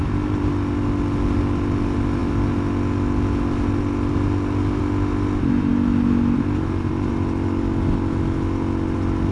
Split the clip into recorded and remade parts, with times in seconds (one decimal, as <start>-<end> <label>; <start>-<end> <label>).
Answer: 0.0-9.3 recorded